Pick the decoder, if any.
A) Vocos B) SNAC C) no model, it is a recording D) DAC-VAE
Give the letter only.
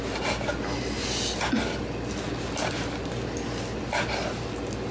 C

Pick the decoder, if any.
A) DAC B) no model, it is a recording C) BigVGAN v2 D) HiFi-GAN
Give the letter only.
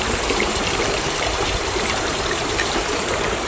C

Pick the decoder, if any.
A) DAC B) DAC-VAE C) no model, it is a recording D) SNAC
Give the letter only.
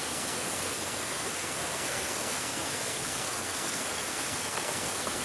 D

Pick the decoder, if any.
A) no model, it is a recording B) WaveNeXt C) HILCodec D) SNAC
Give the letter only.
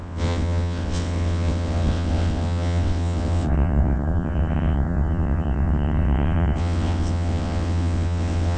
B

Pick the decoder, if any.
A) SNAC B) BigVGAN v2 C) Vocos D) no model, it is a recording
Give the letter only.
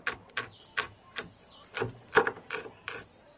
D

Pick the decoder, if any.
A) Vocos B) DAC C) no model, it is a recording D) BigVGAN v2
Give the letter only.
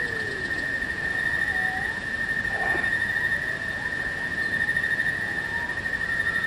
A